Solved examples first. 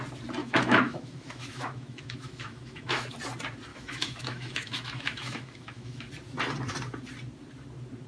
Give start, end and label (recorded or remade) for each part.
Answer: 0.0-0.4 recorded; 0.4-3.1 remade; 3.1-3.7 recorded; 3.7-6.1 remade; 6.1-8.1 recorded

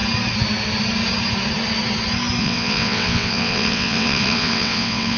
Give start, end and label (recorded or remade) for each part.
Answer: 0.0-2.4 recorded; 2.4-5.2 remade

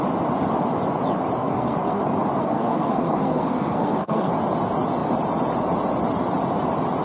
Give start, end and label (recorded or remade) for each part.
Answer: 0.0-1.4 recorded; 1.4-2.0 remade; 2.0-2.4 recorded; 2.4-4.3 remade; 4.3-7.0 recorded

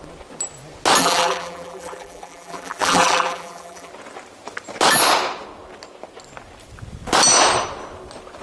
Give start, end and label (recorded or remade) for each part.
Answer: 0.0-1.0 recorded; 1.0-3.9 remade; 3.9-8.4 recorded

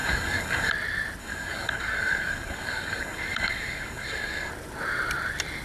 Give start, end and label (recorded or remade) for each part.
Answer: 0.0-0.7 remade; 0.7-1.2 recorded; 1.2-4.5 remade; 4.5-5.6 recorded

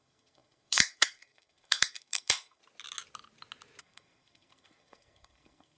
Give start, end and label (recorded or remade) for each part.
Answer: 0.0-2.6 remade; 2.6-3.8 recorded; 3.8-5.8 remade